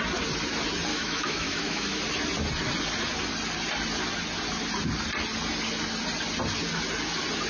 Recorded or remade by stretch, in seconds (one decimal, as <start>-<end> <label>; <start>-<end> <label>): 0.0-0.9 recorded; 0.9-2.0 remade; 2.0-7.5 recorded